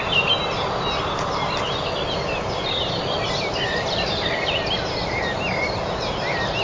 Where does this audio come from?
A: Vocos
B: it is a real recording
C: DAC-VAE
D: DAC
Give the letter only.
B